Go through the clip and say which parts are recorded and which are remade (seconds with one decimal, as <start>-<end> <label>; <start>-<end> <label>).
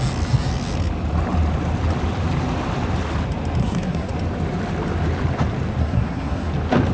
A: 0.0-3.6 recorded; 3.6-4.1 remade; 4.1-5.8 recorded; 5.8-6.5 remade; 6.5-6.9 recorded